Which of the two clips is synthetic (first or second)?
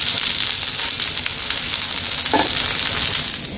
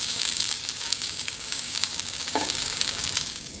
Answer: second